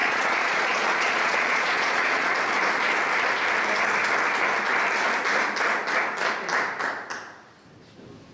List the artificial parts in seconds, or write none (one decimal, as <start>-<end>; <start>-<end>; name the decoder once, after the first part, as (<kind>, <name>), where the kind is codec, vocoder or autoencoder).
0.0-2.3 (vocoder, Vocos)